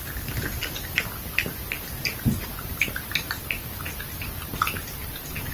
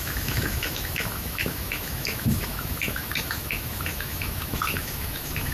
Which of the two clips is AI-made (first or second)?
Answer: second